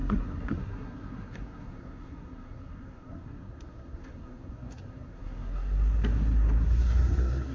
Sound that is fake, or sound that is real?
fake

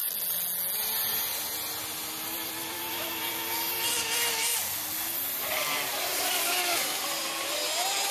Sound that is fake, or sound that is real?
real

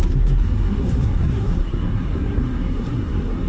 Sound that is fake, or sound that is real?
fake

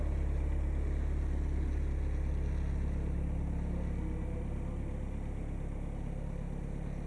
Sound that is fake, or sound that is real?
real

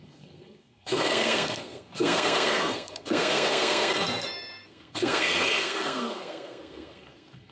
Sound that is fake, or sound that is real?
fake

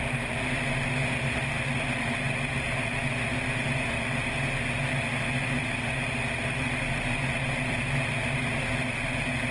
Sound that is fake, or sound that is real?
real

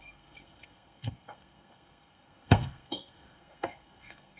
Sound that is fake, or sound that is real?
fake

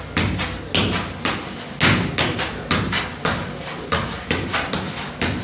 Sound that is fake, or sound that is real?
real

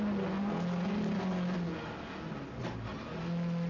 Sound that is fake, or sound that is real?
real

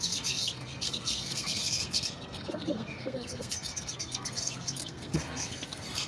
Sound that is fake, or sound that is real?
fake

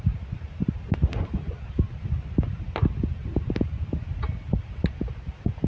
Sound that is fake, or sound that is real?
real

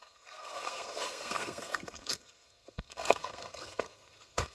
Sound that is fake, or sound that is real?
fake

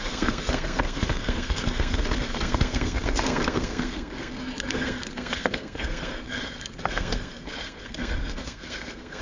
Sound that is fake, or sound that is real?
fake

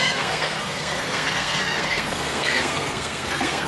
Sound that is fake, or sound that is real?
fake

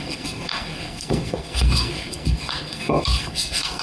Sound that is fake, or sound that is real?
fake